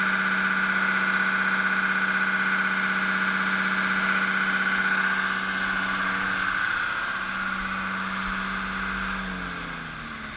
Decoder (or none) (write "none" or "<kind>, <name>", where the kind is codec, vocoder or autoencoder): none